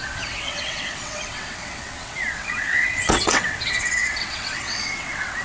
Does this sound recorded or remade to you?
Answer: remade